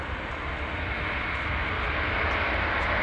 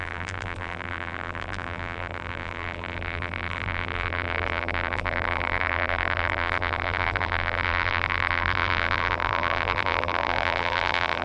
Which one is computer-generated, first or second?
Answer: second